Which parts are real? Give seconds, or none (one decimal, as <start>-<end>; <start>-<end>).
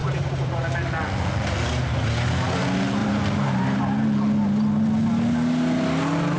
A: 0.6-3.0; 3.8-6.4